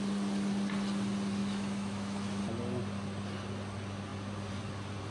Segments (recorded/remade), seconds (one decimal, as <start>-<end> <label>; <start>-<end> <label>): 0.0-1.4 recorded; 1.4-2.4 remade; 2.4-5.1 recorded